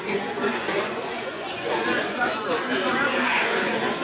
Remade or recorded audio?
remade